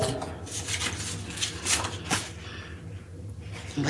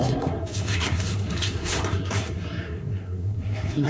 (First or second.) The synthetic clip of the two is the second